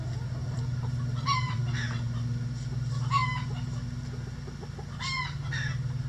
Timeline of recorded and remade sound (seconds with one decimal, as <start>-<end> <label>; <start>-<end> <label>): 0.0-0.4 recorded; 0.4-1.6 remade; 1.6-6.1 recorded